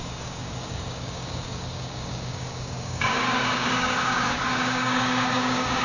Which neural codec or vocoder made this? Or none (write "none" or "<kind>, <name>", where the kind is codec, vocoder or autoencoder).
codec, DAC